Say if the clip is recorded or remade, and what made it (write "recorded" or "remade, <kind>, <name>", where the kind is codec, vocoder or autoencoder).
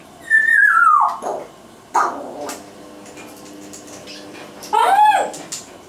recorded